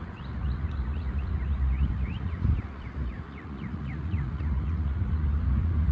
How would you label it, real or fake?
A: fake